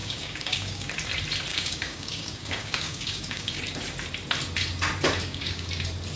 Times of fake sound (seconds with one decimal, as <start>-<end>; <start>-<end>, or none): 0.0-0.9; 1.5-3.6; 5.2-5.7